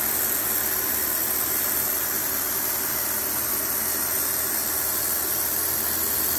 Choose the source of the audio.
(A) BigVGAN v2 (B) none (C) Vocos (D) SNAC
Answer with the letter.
B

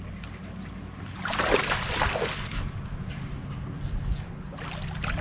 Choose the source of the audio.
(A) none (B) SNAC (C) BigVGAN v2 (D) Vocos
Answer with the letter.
A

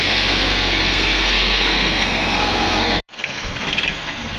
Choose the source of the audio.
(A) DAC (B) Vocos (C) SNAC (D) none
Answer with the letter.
C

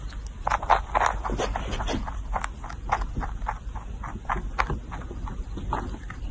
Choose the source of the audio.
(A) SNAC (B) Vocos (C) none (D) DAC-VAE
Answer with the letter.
C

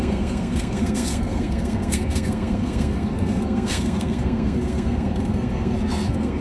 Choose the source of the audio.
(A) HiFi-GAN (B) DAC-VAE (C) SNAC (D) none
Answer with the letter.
C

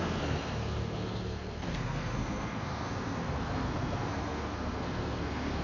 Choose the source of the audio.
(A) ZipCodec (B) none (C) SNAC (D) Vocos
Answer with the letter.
C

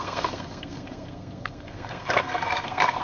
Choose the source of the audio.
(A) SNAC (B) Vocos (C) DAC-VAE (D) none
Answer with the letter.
A